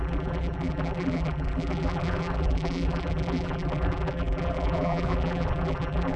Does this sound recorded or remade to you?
remade